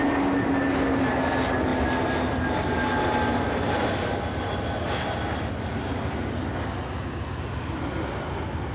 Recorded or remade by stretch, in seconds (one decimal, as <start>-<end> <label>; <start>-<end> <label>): 0.0-8.7 recorded